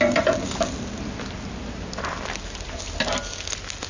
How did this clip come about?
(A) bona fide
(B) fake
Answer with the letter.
A